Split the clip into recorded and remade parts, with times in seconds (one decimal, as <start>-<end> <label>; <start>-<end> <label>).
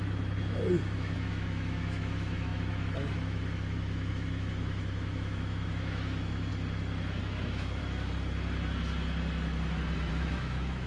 0.0-6.5 remade; 6.5-7.2 recorded; 7.2-7.8 remade; 7.8-10.1 recorded; 10.1-10.9 remade